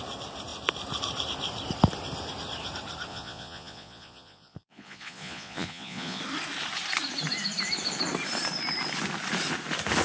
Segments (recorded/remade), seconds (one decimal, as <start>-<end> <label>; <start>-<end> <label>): 0.0-3.1 recorded; 3.1-6.2 remade; 6.2-10.0 recorded